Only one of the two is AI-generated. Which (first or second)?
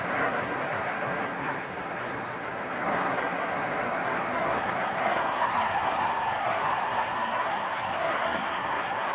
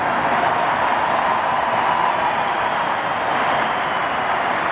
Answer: first